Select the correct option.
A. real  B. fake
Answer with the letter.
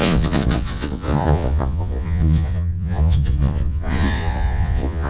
B